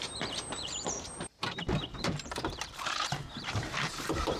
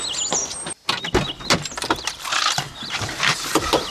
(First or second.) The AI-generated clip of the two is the first